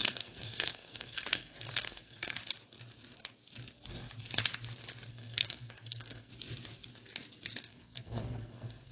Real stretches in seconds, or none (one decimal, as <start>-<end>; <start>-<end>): 2.4-5.1; 6.3-7.6